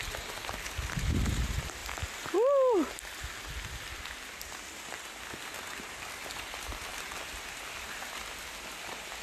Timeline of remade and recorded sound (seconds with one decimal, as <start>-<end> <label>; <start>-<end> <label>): 0.0-6.9 recorded; 6.9-7.7 remade; 7.7-9.2 recorded